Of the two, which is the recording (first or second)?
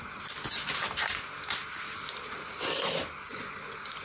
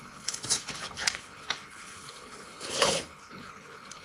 first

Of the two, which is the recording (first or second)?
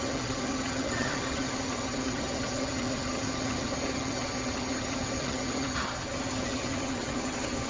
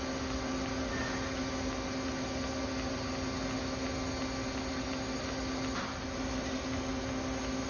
second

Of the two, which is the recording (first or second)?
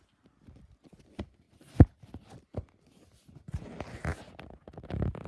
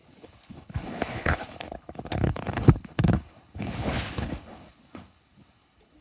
first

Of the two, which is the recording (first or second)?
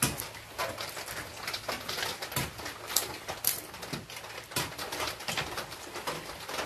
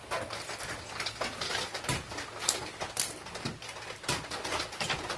second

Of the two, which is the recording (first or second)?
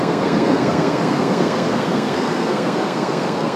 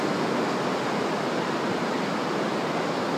second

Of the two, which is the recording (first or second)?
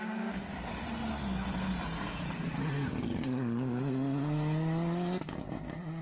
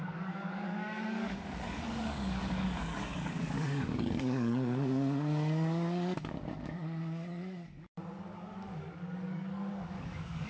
first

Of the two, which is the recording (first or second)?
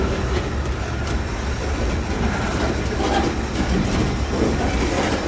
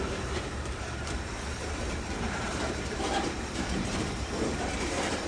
first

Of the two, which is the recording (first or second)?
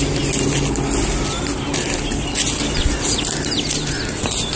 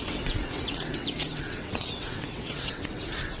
first